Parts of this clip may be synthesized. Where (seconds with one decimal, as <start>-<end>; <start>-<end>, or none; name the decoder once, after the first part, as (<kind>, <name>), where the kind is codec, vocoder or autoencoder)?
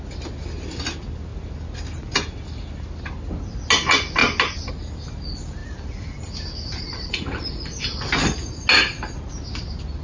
5.6-7.8 (vocoder, BigVGAN v2)